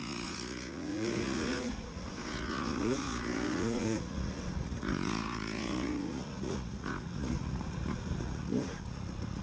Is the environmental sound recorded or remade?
remade